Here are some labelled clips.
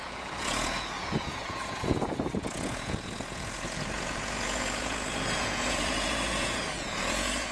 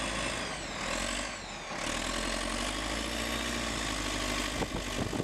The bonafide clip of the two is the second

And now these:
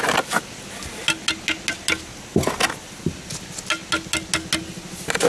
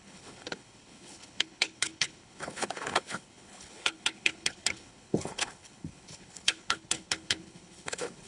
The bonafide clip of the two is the first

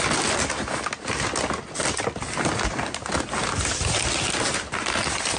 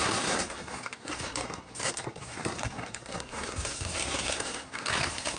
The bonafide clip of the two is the first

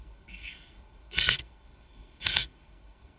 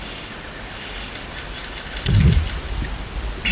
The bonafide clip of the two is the second